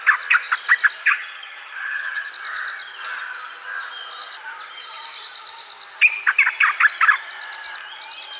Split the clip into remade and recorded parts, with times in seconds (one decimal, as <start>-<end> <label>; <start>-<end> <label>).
0.0-1.0 recorded; 1.0-2.3 remade; 2.3-8.4 recorded